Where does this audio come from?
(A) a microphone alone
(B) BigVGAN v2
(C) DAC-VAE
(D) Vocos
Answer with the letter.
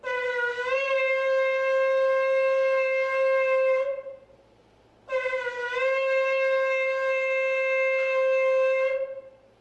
A